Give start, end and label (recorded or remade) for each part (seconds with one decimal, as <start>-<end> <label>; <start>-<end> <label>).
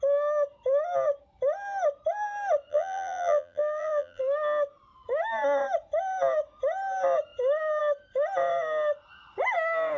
0.0-2.7 recorded; 2.7-4.2 remade; 4.2-10.0 recorded